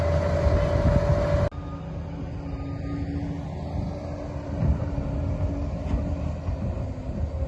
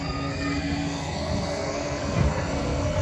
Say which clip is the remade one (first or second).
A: second